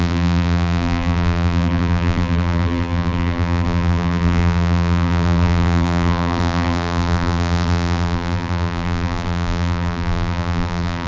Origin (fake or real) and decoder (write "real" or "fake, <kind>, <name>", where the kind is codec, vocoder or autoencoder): fake, vocoder, BigVGAN v2